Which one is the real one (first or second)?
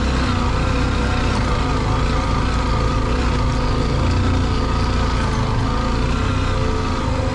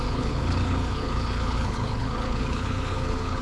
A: first